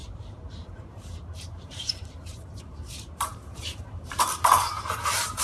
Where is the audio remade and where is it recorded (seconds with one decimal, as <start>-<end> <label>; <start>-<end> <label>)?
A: 0.0-5.4 remade